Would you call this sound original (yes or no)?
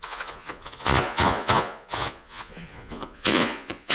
no